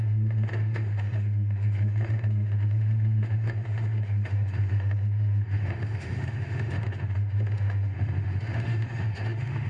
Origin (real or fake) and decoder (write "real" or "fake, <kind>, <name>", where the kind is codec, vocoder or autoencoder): fake, autoencoder, DAC-VAE